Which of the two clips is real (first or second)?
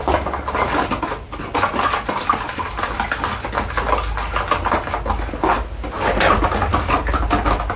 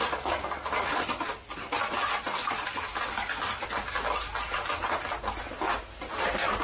first